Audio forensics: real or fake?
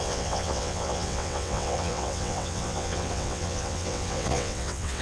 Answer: fake